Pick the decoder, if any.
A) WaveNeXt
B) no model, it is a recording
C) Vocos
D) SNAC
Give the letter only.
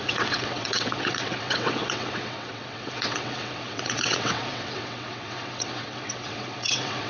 A